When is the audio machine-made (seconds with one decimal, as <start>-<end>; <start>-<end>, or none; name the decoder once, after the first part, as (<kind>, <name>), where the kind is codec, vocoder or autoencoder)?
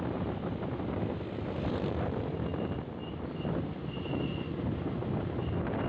none